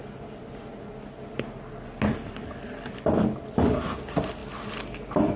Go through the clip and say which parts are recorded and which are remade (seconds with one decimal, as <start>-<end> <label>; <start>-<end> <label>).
0.0-5.4 recorded